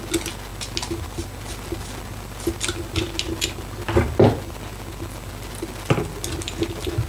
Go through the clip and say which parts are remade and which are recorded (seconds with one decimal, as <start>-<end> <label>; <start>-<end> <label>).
0.0-7.1 recorded